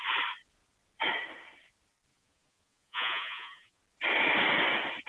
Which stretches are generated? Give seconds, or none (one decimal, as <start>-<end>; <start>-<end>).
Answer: 2.1-3.8